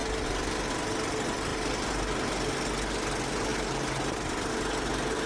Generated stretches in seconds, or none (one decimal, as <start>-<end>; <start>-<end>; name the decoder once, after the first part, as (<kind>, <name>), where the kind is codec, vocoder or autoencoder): none